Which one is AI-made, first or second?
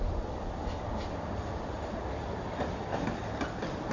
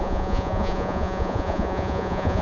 second